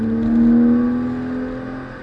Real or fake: real